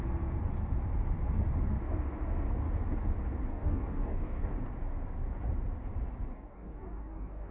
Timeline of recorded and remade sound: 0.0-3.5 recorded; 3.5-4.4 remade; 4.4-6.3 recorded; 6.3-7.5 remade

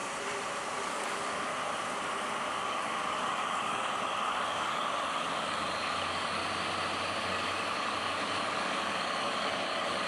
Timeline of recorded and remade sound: 0.0-0.9 recorded; 0.9-1.5 remade; 1.5-2.5 recorded; 2.5-6.4 remade; 6.4-7.2 recorded; 7.2-10.1 remade

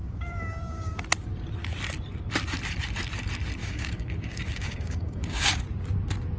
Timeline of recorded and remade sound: 0.0-1.0 remade; 1.0-3.6 recorded; 3.6-5.6 remade; 5.6-6.4 recorded